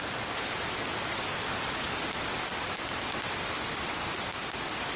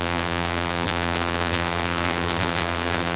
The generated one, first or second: second